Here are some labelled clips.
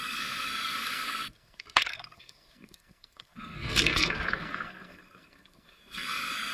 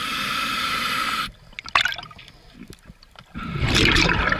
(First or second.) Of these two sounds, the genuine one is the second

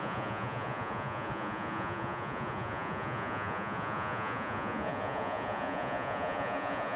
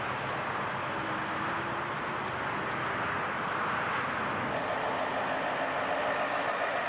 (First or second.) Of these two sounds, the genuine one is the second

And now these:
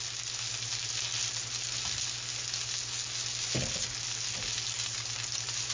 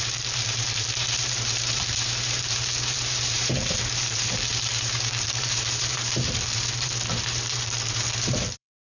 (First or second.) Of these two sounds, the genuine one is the first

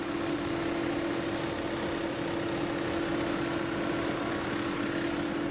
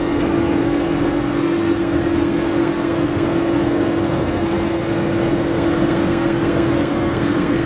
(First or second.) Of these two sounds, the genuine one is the first